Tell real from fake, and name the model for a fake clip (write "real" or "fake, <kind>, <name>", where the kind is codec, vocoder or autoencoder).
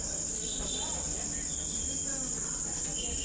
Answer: real